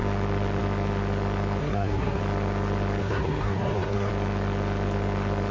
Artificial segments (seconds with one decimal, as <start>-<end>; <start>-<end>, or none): 1.6-2.2; 3.0-4.1